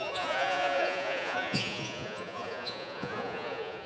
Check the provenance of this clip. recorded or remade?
remade